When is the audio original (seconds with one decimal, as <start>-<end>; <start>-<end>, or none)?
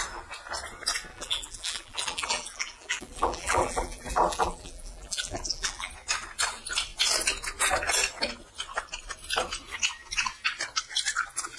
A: 0.0-1.1; 5.9-11.6